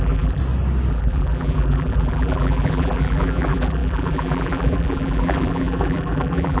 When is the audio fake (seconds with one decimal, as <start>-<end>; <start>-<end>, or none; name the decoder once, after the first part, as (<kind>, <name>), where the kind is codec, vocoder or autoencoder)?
0.0-0.4 (vocoder, BigVGAN v2); 0.9-6.6